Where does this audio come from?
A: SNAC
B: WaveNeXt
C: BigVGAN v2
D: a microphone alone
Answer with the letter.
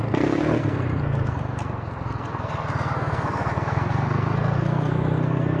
A